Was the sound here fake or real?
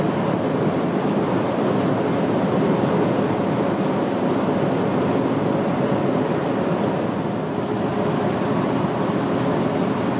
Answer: real